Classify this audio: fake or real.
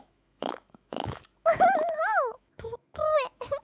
fake